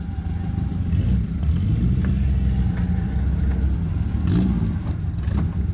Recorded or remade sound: recorded